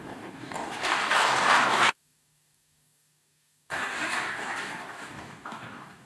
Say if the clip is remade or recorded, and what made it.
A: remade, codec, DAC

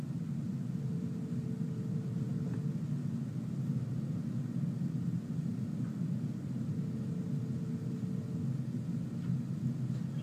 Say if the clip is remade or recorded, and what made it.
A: recorded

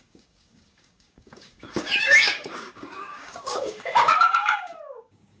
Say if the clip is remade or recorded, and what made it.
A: remade, codec, DAC